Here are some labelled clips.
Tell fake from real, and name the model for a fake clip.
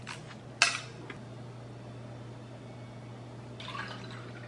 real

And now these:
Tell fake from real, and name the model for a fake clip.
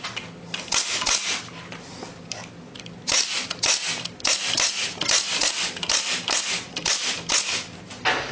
real